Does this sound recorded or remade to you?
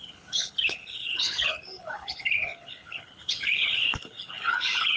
remade